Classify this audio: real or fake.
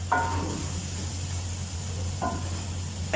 real